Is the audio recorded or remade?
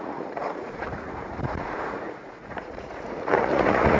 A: remade